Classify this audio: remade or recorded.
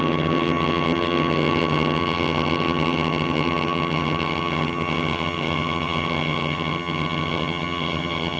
remade